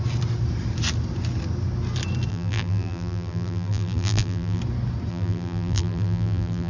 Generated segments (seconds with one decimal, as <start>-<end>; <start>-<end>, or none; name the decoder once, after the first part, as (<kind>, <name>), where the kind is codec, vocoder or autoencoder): 2.3-4.6 (vocoder, BigVGAN v2); 5.1-6.7